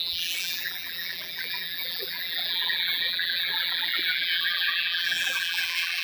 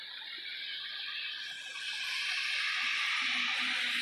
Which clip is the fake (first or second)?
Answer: first